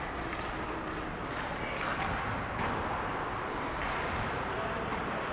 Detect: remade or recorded recorded